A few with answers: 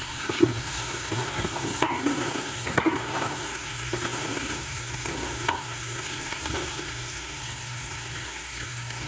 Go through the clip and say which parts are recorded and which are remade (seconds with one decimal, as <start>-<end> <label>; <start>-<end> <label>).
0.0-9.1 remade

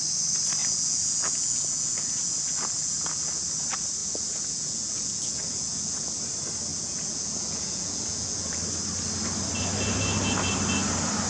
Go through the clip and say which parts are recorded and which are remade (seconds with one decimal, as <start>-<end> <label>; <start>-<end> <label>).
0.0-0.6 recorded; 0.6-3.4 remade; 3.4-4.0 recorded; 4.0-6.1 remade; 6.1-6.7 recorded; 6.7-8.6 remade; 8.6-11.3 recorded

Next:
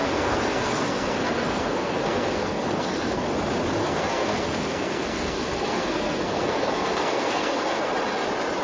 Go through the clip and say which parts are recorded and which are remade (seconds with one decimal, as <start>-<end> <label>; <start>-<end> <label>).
0.0-3.2 remade; 3.2-3.8 recorded; 3.8-7.9 remade; 7.9-8.6 recorded

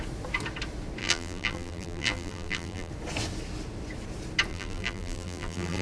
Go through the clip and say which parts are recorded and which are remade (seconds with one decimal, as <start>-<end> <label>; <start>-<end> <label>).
0.0-1.0 recorded; 1.0-2.9 remade; 2.9-4.5 recorded; 4.5-5.8 remade

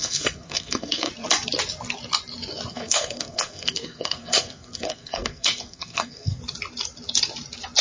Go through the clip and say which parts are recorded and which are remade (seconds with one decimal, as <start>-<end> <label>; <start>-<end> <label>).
0.0-1.1 remade; 1.1-2.7 recorded; 2.7-6.4 remade; 6.4-7.8 recorded